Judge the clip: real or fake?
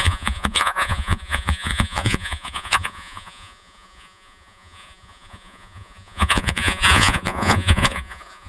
fake